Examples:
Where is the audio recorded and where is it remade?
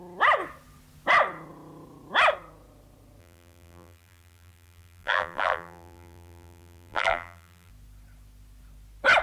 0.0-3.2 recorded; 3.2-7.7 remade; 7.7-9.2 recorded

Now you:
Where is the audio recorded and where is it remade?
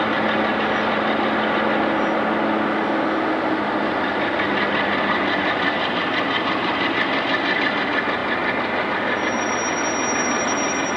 0.0-11.0 recorded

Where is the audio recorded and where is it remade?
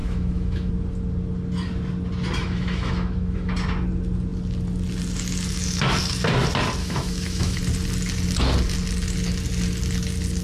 0.0-0.7 remade; 0.7-2.4 recorded; 2.4-3.5 remade; 3.5-6.8 recorded; 6.8-7.6 remade; 7.6-10.4 recorded